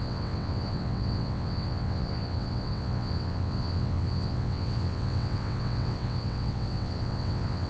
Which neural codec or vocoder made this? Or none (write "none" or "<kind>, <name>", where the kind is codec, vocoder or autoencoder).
vocoder, WaveNeXt